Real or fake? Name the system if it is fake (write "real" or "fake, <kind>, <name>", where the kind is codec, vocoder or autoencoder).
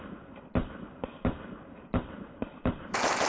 fake, vocoder, BigVGAN v2